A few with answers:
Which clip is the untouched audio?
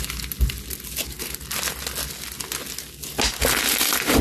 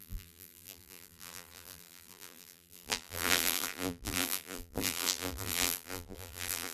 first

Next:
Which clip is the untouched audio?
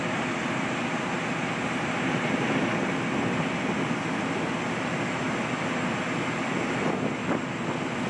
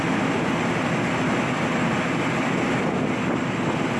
first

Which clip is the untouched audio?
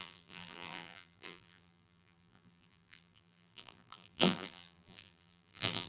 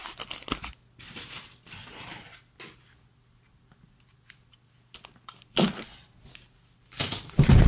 second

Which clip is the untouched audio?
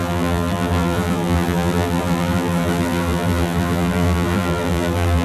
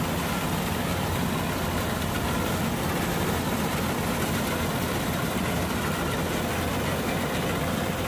second